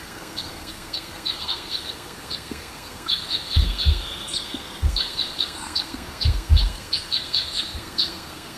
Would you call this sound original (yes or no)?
no